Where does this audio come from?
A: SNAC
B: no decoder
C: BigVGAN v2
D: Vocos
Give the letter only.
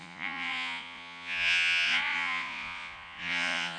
D